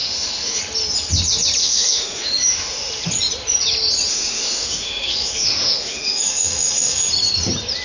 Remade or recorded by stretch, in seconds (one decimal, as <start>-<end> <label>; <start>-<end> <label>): 0.0-0.6 remade; 0.6-1.6 recorded; 1.6-2.9 remade; 2.9-4.1 recorded; 4.1-7.1 remade; 7.1-7.8 recorded